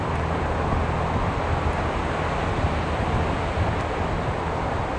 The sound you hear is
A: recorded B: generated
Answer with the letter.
A